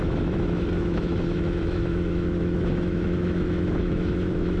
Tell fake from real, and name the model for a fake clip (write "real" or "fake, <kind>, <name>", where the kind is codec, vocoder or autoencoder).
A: fake, autoencoder, DAC-VAE